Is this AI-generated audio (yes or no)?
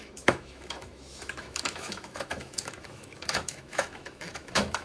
yes